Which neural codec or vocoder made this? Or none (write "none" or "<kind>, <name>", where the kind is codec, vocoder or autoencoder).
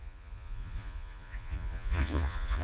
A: vocoder, Vocos